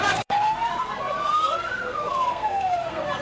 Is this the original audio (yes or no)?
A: no